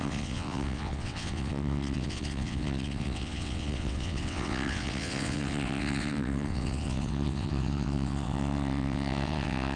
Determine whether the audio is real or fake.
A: fake